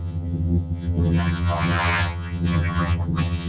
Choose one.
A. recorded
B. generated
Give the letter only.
B